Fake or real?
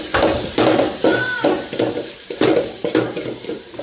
fake